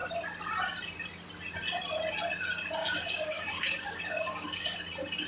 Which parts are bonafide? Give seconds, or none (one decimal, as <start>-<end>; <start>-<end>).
0.0-2.8; 4.8-5.3